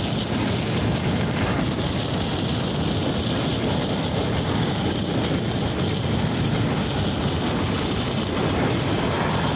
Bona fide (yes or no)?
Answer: yes